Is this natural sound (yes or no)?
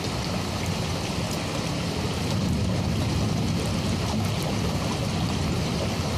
yes